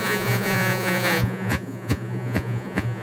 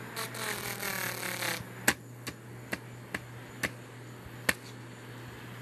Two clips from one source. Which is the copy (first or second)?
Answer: first